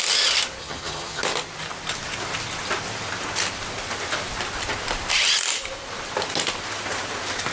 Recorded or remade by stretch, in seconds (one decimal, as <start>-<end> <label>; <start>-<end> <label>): 0.0-0.6 recorded; 0.6-1.2 remade; 1.2-7.5 recorded